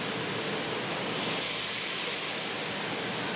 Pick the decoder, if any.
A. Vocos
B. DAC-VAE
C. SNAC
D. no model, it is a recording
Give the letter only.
D